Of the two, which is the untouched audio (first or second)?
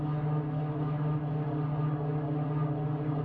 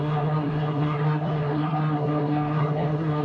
first